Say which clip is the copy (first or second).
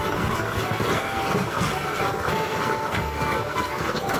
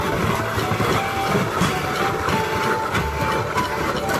first